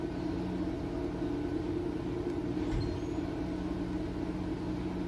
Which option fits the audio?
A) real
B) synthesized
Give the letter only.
A